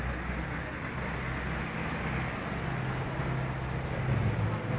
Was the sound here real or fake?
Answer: real